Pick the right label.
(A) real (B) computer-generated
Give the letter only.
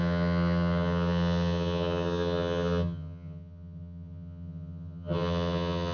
B